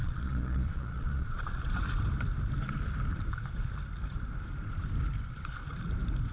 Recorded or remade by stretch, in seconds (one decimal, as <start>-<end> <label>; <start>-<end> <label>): 0.0-1.6 remade; 1.6-6.3 recorded